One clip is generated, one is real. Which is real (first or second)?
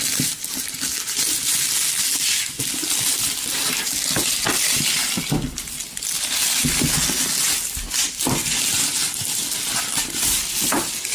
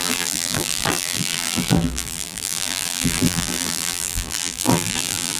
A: first